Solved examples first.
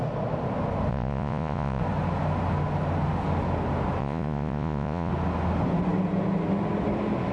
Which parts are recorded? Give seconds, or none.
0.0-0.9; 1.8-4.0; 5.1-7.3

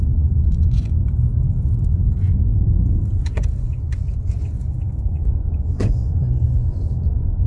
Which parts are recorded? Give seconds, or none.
1.0-2.1; 2.5-3.2

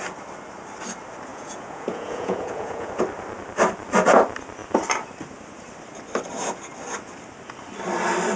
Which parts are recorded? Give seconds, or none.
0.0-1.3; 2.9-8.4

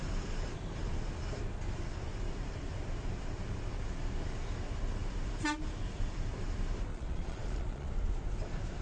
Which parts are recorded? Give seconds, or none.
0.0-6.9; 7.9-8.8

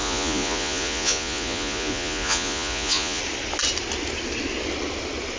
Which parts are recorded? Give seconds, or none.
3.2-5.4

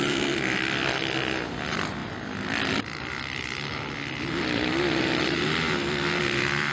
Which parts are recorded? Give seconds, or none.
0.0-6.7